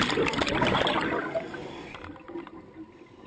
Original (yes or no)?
yes